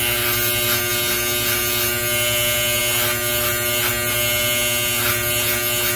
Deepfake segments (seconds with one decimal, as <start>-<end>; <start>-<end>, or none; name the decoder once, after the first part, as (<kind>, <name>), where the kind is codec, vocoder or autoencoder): none